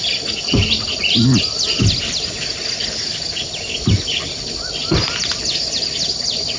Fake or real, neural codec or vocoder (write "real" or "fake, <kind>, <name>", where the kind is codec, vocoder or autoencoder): real